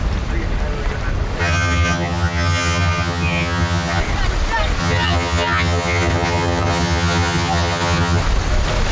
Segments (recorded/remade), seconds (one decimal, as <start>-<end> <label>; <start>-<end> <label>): 0.0-1.4 recorded; 1.4-4.0 remade; 4.0-4.8 recorded; 4.8-8.2 remade; 8.2-8.9 recorded